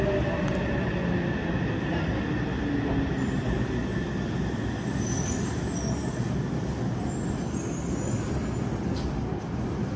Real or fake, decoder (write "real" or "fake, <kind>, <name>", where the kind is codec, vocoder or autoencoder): real